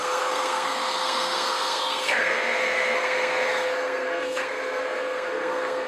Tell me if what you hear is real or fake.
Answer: fake